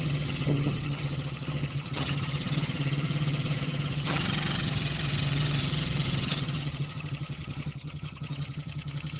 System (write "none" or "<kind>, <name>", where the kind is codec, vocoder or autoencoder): vocoder, HiFi-GAN